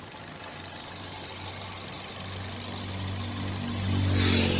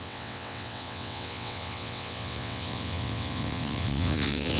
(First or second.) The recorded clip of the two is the first